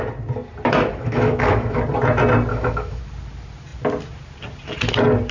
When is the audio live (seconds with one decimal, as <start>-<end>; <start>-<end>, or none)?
0.0-0.9; 1.8-2.5; 3.0-5.3